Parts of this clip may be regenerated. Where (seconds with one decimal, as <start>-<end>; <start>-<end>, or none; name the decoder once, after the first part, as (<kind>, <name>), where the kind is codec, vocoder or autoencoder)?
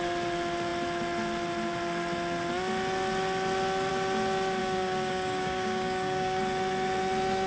4.6-6.4 (codec, DAC)